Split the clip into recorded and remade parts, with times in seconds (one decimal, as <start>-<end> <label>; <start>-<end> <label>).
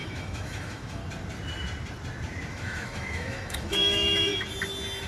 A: 0.0-1.0 remade; 1.0-2.5 recorded; 2.5-4.3 remade; 4.3-5.1 recorded